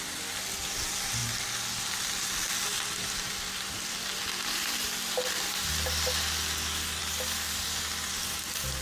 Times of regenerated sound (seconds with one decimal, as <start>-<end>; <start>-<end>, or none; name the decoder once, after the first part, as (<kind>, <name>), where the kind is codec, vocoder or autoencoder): none